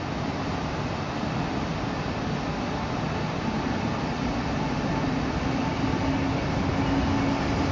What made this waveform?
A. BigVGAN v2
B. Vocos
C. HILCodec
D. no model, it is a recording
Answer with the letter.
D